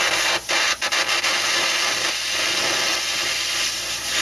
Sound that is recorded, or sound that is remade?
recorded